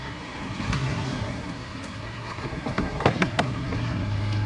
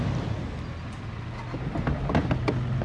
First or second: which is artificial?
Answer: first